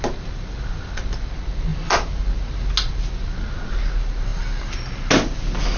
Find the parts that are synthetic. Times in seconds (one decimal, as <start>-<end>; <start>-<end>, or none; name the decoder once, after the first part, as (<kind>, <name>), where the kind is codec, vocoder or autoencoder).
none